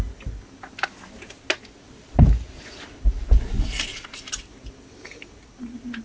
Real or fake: real